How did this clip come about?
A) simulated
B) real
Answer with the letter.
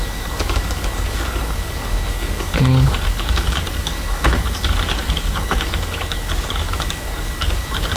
A